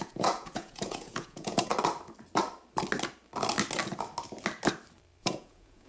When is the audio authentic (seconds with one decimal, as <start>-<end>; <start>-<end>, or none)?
1.7-5.2